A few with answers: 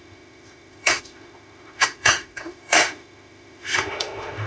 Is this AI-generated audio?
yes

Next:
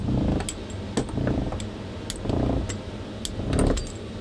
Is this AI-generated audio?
no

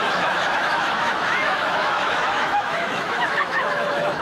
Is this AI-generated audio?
yes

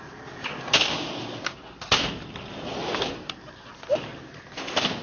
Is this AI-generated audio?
no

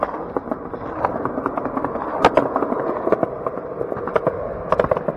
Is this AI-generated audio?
no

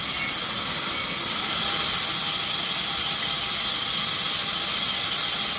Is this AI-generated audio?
no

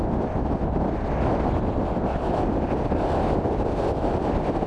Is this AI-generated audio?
no